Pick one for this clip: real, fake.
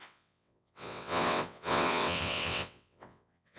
fake